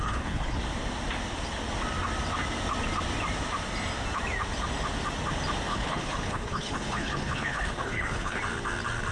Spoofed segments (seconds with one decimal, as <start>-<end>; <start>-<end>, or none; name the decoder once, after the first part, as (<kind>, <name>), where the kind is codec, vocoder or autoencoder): 0.0-0.6 (codec, HILCodec); 5.7-8.4